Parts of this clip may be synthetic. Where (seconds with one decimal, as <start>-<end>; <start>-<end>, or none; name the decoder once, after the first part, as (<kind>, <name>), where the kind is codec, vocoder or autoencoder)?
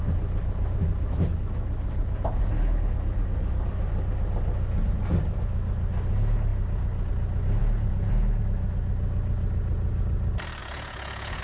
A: 7.6-8.1 (vocoder, Vocos); 10.6-11.4